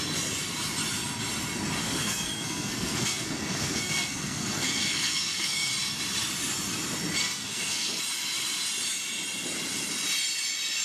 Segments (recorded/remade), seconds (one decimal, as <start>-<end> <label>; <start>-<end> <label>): 0.0-1.8 recorded; 1.8-5.7 remade; 5.7-7.2 recorded; 7.2-8.0 remade; 8.0-10.8 recorded